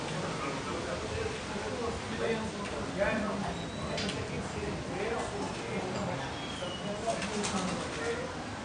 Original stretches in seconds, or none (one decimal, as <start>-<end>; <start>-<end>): 0.0-8.6